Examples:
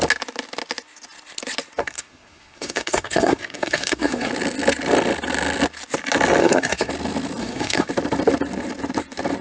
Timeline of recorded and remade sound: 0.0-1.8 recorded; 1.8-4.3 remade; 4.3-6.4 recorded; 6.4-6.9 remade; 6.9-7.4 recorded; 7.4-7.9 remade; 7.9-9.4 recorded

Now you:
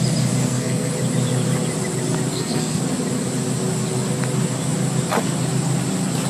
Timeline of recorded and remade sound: 0.0-0.4 recorded; 0.4-0.9 remade; 0.9-2.3 recorded; 2.3-2.8 remade; 2.8-6.3 recorded

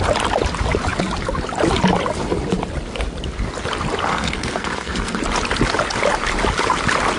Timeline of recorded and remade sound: 0.0-4.1 recorded; 4.1-5.2 remade; 5.2-7.2 recorded

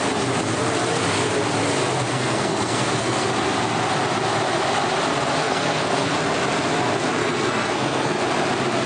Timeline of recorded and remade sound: 0.0-2.1 recorded; 2.1-3.3 remade; 3.3-5.4 recorded; 5.4-6.1 remade; 6.1-7.2 recorded; 7.2-8.2 remade; 8.2-8.9 recorded

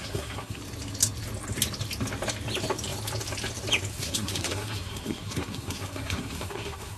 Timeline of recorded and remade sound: 0.0-0.6 remade; 0.6-3.9 recorded; 3.9-7.0 remade